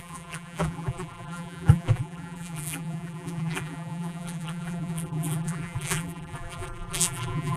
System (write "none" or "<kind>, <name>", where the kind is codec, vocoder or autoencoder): vocoder, BigVGAN v2